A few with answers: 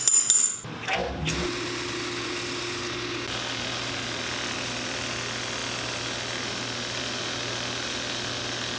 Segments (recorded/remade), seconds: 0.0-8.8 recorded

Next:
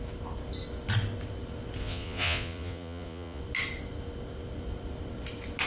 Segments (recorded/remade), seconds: 0.0-1.8 recorded; 1.8-3.4 remade; 3.4-5.7 recorded

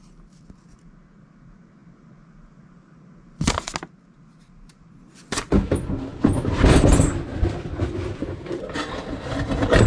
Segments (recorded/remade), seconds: 0.0-9.9 recorded

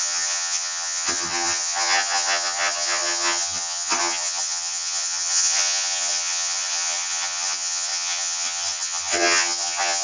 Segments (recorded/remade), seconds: 0.0-10.0 remade

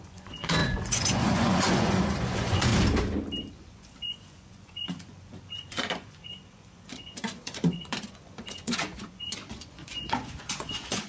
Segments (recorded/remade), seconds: 0.0-2.7 remade; 2.7-3.5 recorded; 3.5-11.1 remade